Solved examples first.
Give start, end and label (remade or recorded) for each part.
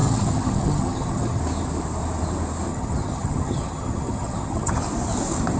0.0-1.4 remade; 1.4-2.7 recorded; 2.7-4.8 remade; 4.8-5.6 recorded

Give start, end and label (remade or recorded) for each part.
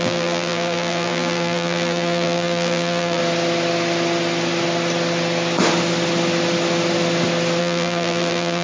0.0-3.2 remade; 3.2-7.6 recorded; 7.6-8.6 remade